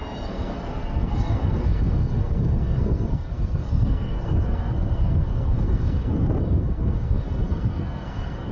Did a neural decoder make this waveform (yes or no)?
yes